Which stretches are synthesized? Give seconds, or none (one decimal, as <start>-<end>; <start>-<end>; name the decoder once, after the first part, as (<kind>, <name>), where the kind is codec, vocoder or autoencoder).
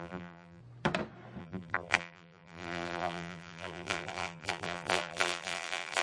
0.0-0.6 (vocoder, BigVGAN v2); 1.4-6.0